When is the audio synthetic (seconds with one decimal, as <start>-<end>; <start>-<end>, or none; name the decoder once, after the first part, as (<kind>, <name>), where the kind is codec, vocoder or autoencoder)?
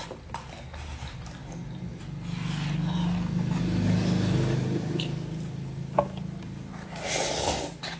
none